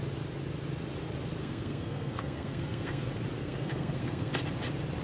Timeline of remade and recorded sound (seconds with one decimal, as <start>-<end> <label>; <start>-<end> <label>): 0.0-1.4 recorded; 1.4-3.0 remade; 3.0-3.4 recorded; 3.4-4.3 remade; 4.3-5.0 recorded